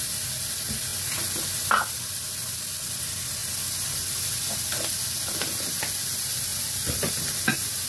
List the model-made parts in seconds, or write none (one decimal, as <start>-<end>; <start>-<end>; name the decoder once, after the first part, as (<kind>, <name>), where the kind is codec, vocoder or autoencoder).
none